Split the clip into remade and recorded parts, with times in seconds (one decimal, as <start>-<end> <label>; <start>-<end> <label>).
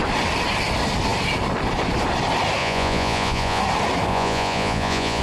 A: 0.0-2.6 recorded; 2.6-3.6 remade; 3.6-4.1 recorded; 4.1-5.2 remade